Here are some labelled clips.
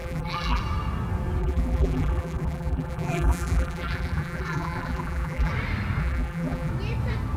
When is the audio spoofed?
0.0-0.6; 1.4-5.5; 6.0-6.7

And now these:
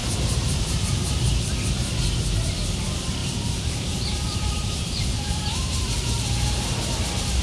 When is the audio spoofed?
0.0-0.8; 3.2-6.7

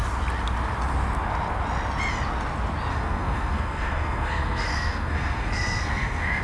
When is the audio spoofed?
2.9-6.4

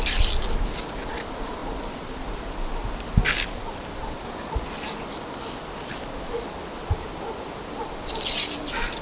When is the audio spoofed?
none

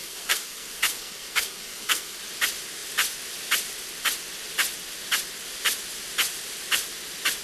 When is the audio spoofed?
0.0-2.2

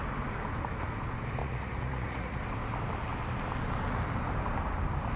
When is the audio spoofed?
1.4-2.4

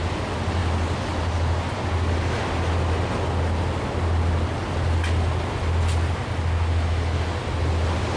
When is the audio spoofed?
none